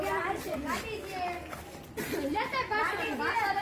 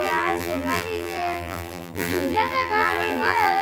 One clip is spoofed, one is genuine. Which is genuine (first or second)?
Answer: first